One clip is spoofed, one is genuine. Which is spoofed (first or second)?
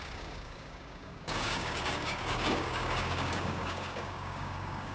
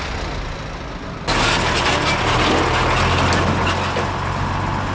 first